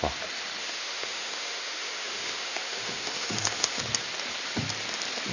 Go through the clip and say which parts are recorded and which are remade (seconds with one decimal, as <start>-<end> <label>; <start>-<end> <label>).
0.0-0.6 recorded; 0.6-3.8 remade; 3.8-5.3 recorded